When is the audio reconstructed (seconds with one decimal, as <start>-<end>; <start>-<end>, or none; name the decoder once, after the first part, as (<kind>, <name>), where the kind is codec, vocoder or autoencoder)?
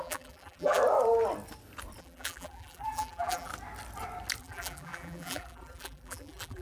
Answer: 0.0-0.8 (vocoder, BigVGAN v2); 2.0-3.5; 4.4-6.6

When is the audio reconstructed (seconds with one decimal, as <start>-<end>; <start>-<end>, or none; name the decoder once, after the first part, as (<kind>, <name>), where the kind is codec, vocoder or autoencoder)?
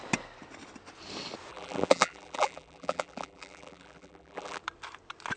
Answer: 1.5-4.6 (vocoder, BigVGAN v2)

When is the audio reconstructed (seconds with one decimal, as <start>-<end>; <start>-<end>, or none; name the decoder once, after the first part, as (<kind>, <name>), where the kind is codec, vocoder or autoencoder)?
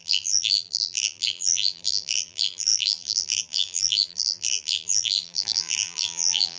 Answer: 0.0-6.6 (vocoder, BigVGAN v2)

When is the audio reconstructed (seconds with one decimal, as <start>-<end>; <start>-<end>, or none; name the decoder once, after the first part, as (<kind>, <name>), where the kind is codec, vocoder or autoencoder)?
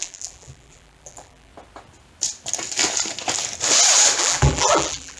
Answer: 0.0-1.5 (vocoder, BigVGAN v2); 4.2-5.2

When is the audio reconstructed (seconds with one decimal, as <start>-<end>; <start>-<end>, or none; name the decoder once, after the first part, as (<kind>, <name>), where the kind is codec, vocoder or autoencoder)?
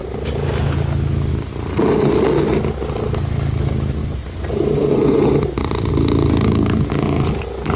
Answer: 4.0-5.9 (vocoder, BigVGAN v2)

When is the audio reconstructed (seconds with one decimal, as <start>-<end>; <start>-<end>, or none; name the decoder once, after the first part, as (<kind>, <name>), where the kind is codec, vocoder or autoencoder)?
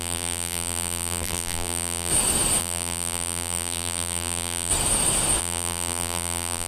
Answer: 0.0-2.1 (vocoder, BigVGAN v2); 2.6-4.7; 5.4-6.7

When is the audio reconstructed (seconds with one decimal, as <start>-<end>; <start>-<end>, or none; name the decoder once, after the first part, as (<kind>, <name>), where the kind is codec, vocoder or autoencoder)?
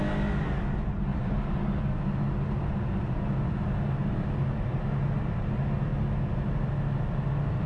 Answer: 1.1-1.8 (vocoder, BigVGAN v2); 4.0-4.9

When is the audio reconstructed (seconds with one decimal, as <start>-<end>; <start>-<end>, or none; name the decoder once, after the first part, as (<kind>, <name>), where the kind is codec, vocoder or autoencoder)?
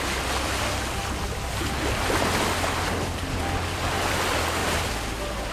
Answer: 4.6-5.5 (vocoder, BigVGAN v2)